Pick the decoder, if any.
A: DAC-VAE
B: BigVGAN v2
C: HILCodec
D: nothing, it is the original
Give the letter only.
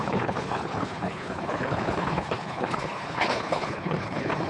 C